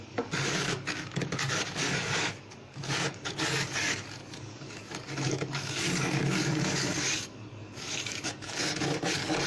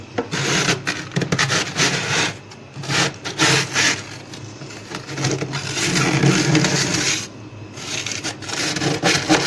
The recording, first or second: second